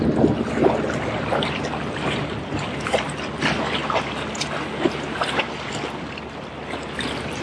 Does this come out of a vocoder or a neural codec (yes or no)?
no